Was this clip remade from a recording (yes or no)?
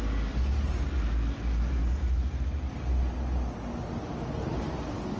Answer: no